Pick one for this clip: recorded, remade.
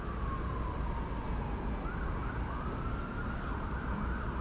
recorded